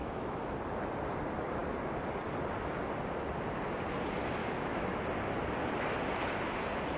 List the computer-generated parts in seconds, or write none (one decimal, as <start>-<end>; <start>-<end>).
0.0-0.5; 4.4-5.0